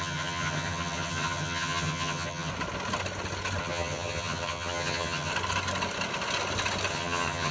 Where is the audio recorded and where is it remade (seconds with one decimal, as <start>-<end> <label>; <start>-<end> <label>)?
0.0-2.5 remade; 2.5-3.6 recorded; 3.6-5.3 remade; 5.3-6.9 recorded; 6.9-7.5 remade